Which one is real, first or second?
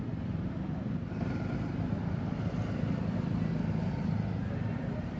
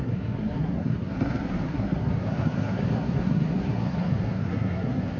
first